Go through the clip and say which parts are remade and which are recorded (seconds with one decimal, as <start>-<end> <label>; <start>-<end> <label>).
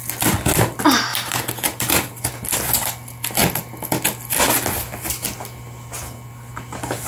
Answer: 0.0-1.1 recorded; 1.1-2.2 remade; 2.2-7.1 recorded